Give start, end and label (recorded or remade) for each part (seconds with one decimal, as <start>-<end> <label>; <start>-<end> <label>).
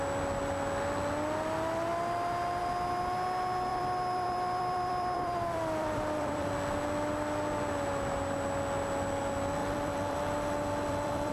0.0-3.7 recorded; 3.7-6.5 remade; 6.5-9.6 recorded; 9.6-11.3 remade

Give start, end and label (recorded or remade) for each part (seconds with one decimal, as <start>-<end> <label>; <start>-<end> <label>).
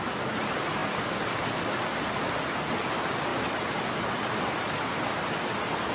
0.0-3.3 recorded; 3.3-5.9 remade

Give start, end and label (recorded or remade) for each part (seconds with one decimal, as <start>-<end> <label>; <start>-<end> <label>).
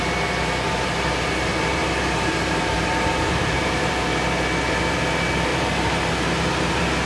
0.0-1.8 recorded; 1.8-4.0 remade; 4.0-5.5 recorded; 5.5-6.1 remade; 6.1-7.1 recorded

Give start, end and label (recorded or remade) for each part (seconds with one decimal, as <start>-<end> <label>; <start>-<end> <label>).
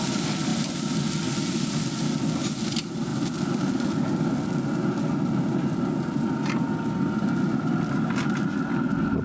0.0-9.2 recorded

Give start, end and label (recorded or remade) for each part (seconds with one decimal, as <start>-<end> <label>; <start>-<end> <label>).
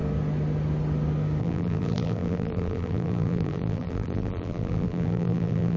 0.0-1.4 recorded; 1.4-5.8 remade